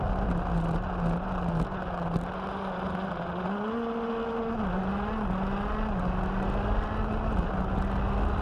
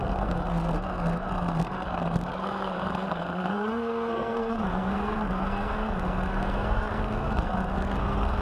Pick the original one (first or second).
first